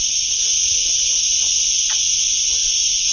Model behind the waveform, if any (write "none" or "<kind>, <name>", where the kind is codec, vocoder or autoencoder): none